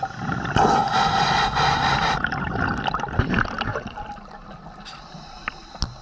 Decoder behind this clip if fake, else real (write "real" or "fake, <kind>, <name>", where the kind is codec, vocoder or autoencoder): real